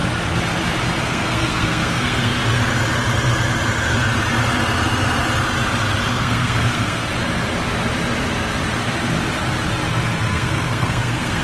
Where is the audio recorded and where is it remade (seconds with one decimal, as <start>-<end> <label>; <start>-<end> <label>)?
0.0-1.0 recorded; 1.0-2.3 remade; 2.3-6.1 recorded; 6.1-7.0 remade; 7.0-10.2 recorded; 10.2-11.4 remade